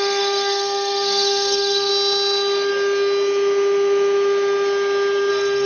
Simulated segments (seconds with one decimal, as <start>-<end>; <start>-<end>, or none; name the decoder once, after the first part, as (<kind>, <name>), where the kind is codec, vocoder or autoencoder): 0.0-1.9 (codec, SNAC); 5.3-5.7